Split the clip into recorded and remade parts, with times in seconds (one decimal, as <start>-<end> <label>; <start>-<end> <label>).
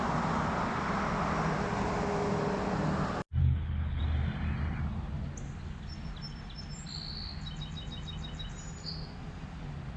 0.0-3.4 recorded; 3.4-4.0 remade; 4.0-10.0 recorded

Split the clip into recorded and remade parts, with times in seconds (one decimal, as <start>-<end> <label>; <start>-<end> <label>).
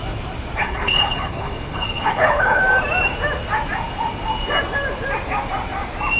0.0-0.6 recorded; 0.6-2.6 remade; 2.6-6.2 recorded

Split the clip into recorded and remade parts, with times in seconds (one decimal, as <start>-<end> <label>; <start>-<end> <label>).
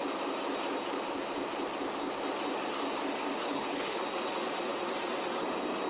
0.0-3.4 recorded; 3.4-4.0 remade; 4.0-5.9 recorded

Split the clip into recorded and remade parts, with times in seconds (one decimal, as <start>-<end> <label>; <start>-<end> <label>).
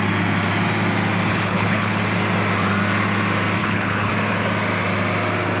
0.0-1.3 recorded; 1.3-2.0 remade; 2.0-3.6 recorded; 3.6-4.1 remade; 4.1-5.6 recorded